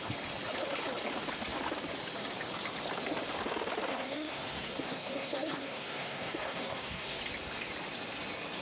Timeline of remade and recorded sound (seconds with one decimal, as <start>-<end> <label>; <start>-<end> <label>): 0.0-3.9 recorded; 3.9-7.2 remade; 7.2-8.6 recorded